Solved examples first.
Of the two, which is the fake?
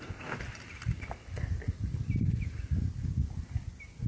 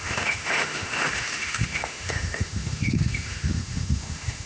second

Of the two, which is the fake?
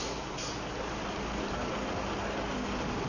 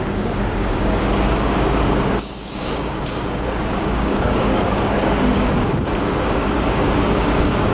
second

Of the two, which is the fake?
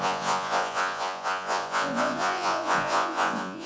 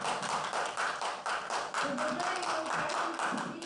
first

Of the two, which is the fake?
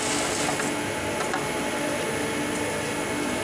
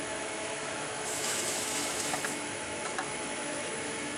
second